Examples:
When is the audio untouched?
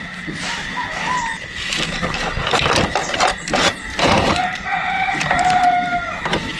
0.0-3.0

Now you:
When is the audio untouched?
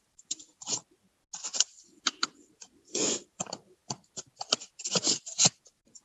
0.8-1.4; 3.8-5.6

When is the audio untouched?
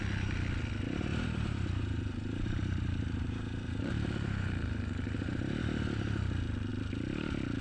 0.0-1.1; 5.6-7.6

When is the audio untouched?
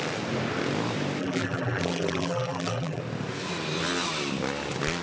0.0-1.2; 3.0-5.0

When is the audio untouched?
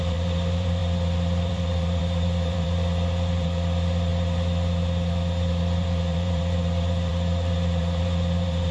4.1-5.5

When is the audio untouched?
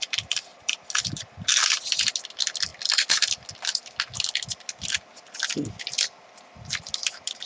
0.0-0.5; 1.2-7.5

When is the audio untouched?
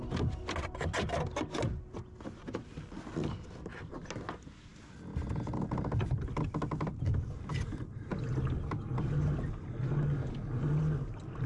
0.0-11.5